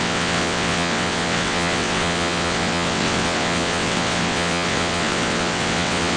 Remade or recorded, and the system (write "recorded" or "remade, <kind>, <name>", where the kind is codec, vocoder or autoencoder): remade, vocoder, WaveNeXt